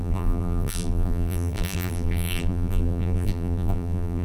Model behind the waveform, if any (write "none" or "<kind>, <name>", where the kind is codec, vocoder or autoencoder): vocoder, BigVGAN v2